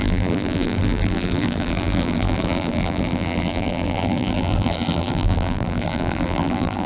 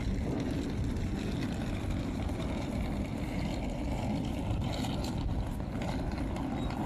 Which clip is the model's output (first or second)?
first